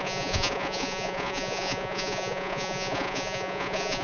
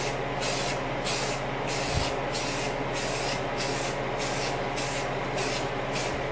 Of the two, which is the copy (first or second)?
first